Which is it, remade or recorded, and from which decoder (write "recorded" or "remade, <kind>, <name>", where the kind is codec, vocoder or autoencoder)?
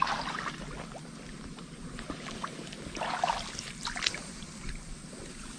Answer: remade, vocoder, BigVGAN v2